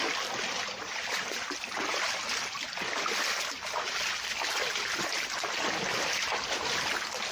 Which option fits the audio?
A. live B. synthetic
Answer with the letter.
A